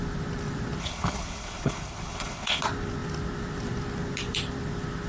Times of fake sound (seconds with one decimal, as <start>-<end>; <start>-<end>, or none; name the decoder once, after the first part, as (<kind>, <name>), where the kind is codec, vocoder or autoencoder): 0.8-2.6 (codec, HILCodec)